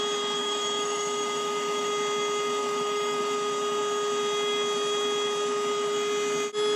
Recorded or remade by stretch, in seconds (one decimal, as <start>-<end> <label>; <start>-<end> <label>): 0.0-0.4 recorded; 0.4-1.9 remade; 1.9-2.6 recorded; 2.6-3.2 remade; 3.2-6.8 recorded

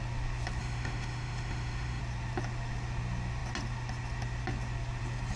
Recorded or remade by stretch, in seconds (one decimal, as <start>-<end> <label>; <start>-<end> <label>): 0.0-0.6 recorded; 0.6-2.0 remade; 2.0-5.4 recorded

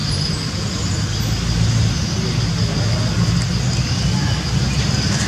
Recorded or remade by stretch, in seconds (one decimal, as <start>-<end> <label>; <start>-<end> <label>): 0.0-0.5 remade; 0.5-5.3 recorded

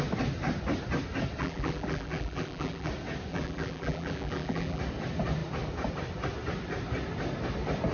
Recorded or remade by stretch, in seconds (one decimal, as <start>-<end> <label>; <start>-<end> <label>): 0.0-1.4 recorded; 1.4-2.9 remade; 2.9-3.3 recorded; 3.3-4.8 remade; 4.8-7.9 recorded

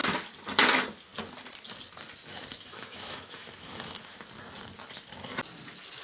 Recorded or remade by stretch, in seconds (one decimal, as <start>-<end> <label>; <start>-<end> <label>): 0.0-2.3 recorded; 2.3-4.0 remade; 4.0-6.0 recorded